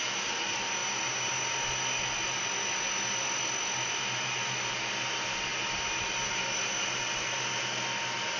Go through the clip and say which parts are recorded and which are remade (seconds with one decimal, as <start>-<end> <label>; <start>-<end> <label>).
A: 0.0-8.4 recorded